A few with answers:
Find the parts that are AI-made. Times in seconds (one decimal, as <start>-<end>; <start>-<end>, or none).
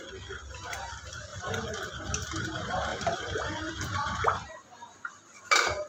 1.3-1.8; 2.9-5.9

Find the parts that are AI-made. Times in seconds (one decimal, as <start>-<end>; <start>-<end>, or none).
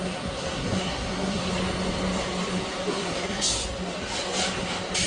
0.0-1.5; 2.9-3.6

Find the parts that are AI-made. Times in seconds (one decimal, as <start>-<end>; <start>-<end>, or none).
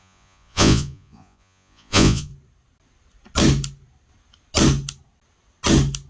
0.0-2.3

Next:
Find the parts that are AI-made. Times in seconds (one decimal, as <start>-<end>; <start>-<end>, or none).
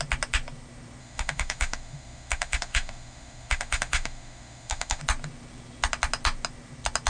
1.0-5.0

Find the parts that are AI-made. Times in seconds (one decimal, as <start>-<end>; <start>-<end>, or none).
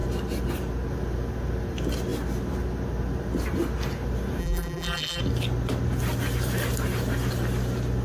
4.4-5.2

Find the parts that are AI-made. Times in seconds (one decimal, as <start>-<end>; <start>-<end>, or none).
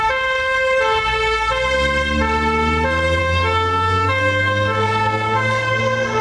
3.2-5.8